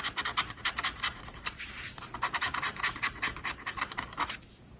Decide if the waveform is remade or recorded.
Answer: remade